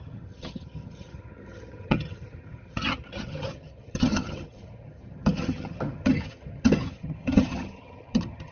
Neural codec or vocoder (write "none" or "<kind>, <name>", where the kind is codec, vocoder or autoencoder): vocoder, HiFi-GAN